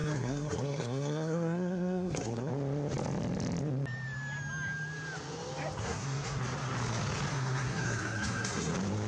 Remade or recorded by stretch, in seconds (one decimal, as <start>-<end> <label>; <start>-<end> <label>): 0.0-2.5 remade; 2.5-5.8 recorded; 5.8-6.4 remade; 6.4-7.3 recorded; 7.3-8.7 remade; 8.7-9.1 recorded